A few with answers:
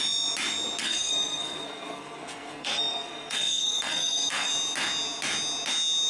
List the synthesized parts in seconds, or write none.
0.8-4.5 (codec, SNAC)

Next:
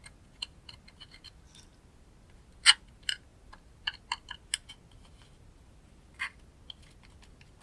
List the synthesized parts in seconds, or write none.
none

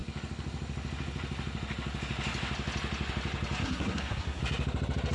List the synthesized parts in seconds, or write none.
3.6-4.4 (codec, SNAC)